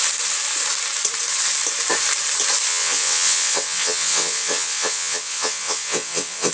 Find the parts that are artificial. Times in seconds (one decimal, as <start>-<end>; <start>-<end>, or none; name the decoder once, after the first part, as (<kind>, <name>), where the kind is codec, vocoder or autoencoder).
2.7-6.5 (vocoder, WaveNeXt)